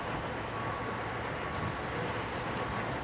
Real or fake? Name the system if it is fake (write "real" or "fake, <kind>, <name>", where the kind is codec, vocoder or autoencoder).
real